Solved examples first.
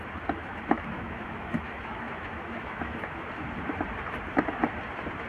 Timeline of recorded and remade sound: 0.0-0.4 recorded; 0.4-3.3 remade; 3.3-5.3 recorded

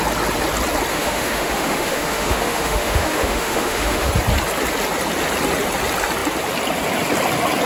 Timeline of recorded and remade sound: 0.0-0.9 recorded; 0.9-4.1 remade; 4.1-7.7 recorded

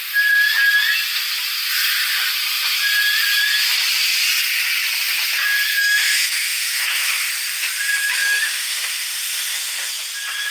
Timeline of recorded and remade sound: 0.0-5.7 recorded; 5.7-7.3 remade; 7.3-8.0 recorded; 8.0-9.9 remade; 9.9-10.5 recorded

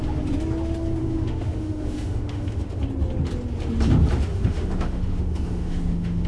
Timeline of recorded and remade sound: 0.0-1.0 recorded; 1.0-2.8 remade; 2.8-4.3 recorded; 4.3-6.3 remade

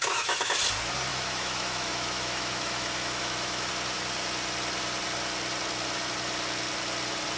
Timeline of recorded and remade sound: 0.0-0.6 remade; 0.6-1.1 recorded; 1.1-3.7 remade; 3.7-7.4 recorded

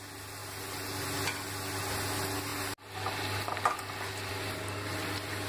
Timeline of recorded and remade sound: 0.0-5.5 recorded

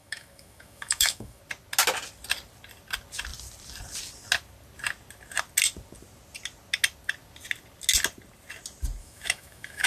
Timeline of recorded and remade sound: 0.0-1.4 remade; 1.4-9.0 recorded; 9.0-9.9 remade